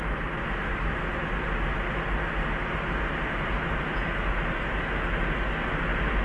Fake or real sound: real